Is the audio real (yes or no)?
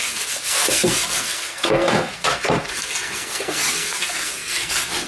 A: no